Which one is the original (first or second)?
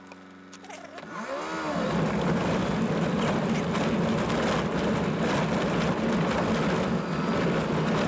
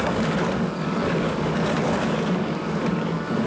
first